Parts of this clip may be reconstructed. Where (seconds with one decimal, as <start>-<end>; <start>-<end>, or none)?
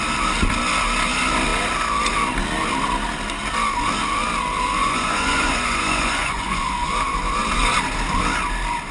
4.8-6.9